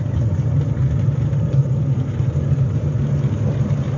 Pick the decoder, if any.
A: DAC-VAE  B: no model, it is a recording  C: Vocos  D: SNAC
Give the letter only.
B